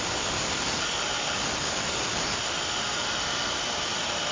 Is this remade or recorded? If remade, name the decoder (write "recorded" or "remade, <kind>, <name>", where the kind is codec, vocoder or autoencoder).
recorded